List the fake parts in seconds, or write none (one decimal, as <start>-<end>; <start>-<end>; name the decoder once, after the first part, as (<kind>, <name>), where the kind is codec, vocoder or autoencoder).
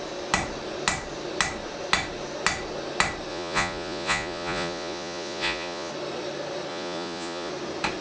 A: 3.3-5.9 (vocoder, Vocos); 6.7-7.5